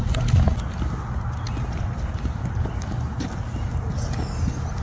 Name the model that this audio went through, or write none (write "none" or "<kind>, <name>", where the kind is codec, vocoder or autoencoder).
none